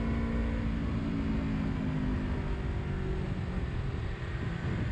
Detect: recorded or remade recorded